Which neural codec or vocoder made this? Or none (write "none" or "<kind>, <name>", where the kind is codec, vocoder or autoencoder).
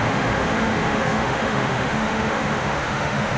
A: autoencoder, DAC-VAE